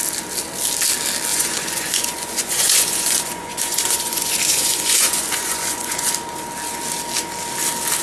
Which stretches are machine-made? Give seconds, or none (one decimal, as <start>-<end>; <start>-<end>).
1.3-6.1